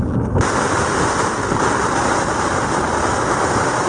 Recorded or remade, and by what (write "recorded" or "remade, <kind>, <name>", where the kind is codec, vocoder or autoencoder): recorded